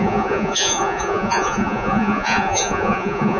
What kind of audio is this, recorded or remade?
remade